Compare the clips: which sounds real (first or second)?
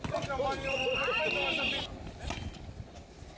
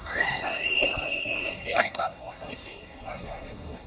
first